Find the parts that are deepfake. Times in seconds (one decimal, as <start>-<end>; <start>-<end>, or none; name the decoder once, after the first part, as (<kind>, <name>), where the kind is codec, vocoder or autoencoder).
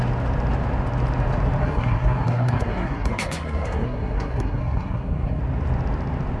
1.6-5.4 (codec, SNAC)